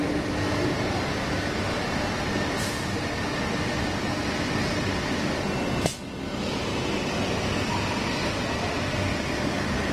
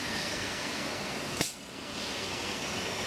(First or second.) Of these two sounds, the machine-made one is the second